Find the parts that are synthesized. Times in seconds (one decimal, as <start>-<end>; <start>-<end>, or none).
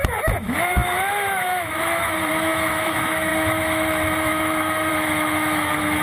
0.0-6.0